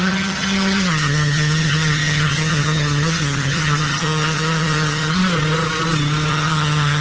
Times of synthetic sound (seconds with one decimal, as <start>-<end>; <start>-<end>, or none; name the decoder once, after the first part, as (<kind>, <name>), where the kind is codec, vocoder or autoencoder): 0.0-5.2 (vocoder, HiFi-GAN); 6.3-7.0